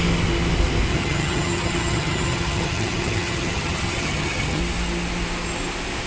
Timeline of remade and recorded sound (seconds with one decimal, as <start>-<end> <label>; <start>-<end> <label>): 0.0-0.9 recorded; 0.9-4.6 remade; 4.6-6.1 recorded